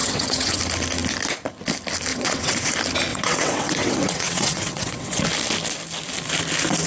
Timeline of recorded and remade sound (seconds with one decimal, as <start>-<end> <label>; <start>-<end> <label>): 0.0-0.6 remade; 0.6-2.1 recorded; 2.1-2.7 remade; 2.7-3.1 recorded; 3.1-5.2 remade; 5.2-6.9 recorded